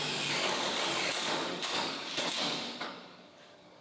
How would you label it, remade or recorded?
remade